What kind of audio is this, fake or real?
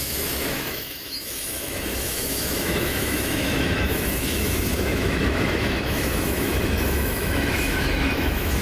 fake